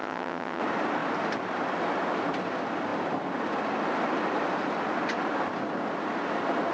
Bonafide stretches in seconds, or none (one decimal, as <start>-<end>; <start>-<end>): 0.6-6.7